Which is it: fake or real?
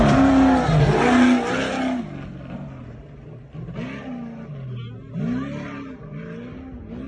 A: real